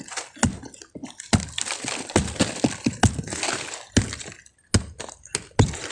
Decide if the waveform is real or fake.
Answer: real